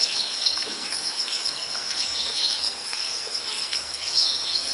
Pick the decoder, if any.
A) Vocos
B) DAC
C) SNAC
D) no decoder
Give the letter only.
C